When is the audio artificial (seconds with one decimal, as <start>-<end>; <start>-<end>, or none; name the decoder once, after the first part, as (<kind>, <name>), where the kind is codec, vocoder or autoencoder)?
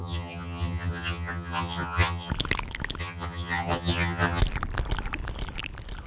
0.0-2.3 (vocoder, HiFi-GAN); 3.0-4.4